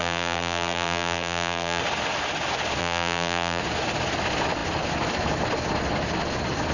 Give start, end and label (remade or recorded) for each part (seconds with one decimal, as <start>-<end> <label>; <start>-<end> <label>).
0.0-1.8 remade; 1.8-2.8 recorded; 2.8-3.6 remade; 3.6-6.7 recorded